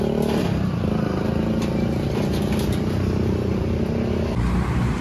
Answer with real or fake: real